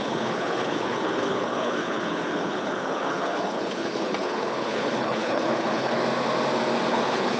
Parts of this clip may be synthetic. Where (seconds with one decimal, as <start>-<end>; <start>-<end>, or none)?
0.0-6.0; 6.9-7.4